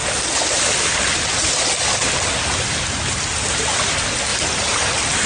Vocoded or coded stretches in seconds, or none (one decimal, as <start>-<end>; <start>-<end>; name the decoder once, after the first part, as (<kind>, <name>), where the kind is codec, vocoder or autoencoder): none